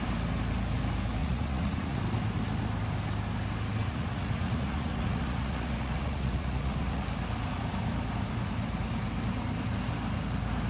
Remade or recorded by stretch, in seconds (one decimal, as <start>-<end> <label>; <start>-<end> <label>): 0.0-1.2 recorded; 1.2-2.0 remade; 2.0-3.8 recorded; 3.8-7.0 remade; 7.0-10.7 recorded